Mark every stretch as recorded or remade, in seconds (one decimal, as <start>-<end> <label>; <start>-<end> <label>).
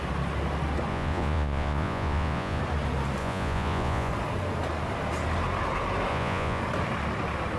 0.0-0.9 recorded; 0.9-2.6 remade; 2.6-3.2 recorded; 3.2-4.1 remade; 4.1-6.1 recorded; 6.1-6.6 remade; 6.6-7.6 recorded